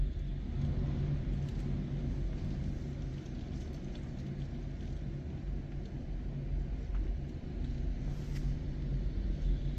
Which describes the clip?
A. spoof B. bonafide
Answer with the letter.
B